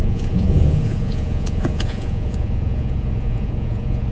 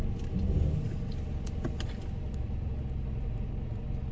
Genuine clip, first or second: second